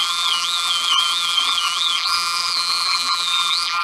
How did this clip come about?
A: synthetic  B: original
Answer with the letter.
A